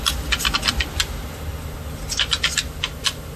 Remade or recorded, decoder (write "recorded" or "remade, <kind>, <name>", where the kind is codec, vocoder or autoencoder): recorded